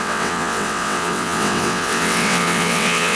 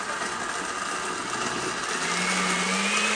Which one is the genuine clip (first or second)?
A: second